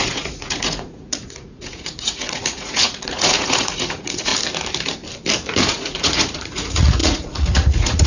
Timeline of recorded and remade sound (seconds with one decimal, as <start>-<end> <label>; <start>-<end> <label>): 0.0-4.3 remade; 4.3-5.6 recorded; 5.6-8.1 remade